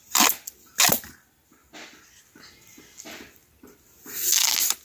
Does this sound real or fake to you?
real